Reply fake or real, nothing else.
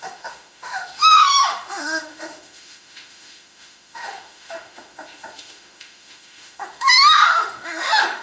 fake